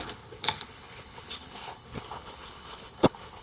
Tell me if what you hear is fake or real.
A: fake